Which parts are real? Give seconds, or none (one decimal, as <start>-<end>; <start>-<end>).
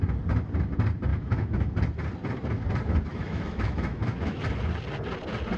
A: 0.0-1.1; 1.7-3.1; 4.4-5.6